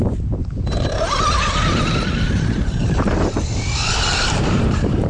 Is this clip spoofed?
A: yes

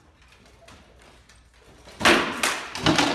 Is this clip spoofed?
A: no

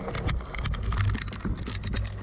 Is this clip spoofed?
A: no